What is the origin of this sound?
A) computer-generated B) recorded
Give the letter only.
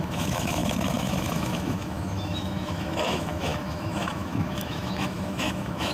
A